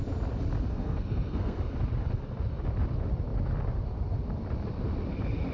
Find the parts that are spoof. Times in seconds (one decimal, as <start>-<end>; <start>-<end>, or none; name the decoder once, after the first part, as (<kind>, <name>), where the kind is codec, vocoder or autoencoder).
0.7-1.6 (codec, SNAC)